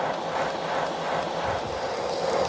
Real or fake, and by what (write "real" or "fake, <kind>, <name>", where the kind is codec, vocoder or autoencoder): real